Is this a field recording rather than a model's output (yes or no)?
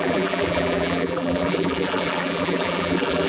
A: no